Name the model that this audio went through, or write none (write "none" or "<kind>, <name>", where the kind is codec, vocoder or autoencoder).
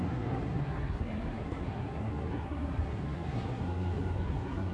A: codec, SNAC